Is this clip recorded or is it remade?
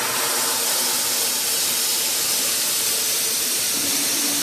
recorded